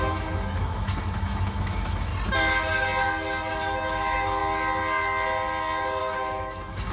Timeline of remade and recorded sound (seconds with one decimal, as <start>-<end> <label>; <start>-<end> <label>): 0.0-2.1 remade; 2.1-3.5 recorded; 3.5-4.4 remade; 4.4-6.0 recorded; 6.0-6.9 remade